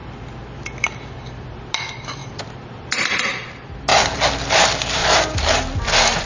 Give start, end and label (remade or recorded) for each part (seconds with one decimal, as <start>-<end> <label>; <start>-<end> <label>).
0.0-6.3 recorded